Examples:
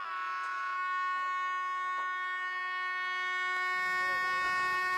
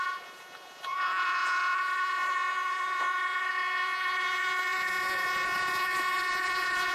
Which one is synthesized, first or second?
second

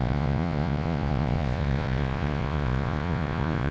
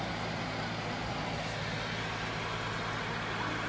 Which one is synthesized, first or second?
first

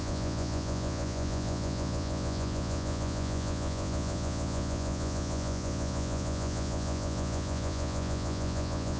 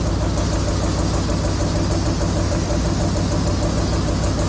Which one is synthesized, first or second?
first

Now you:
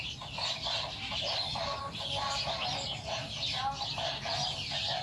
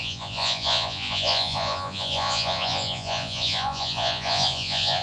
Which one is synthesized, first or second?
second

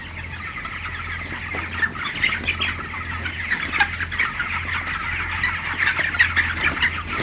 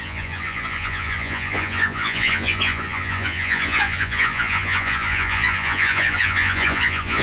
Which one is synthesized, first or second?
second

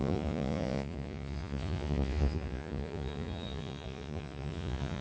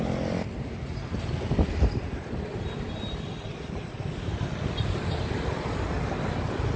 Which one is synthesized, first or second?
first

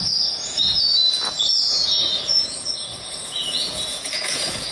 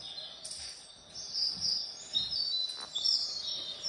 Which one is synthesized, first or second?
first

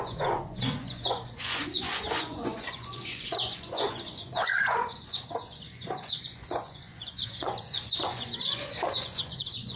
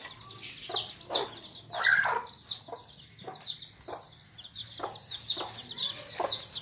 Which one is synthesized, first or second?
first